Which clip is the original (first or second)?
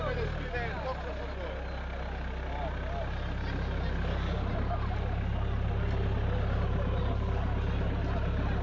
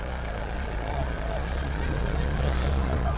first